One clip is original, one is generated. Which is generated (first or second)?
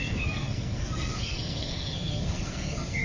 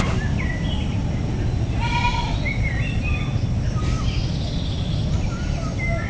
first